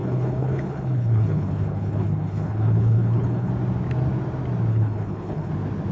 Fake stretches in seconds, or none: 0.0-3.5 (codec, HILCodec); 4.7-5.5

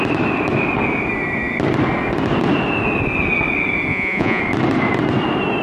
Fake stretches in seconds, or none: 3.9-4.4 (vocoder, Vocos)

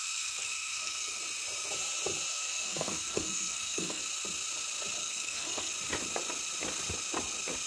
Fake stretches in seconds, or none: 0.0-1.2 (codec, SNAC); 2.3-4.0; 5.0-5.7